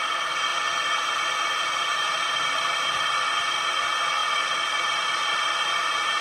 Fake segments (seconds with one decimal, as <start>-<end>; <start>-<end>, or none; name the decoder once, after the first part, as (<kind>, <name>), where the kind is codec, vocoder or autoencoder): 0.5-3.0 (vocoder, BigVGAN v2); 4.2-5.0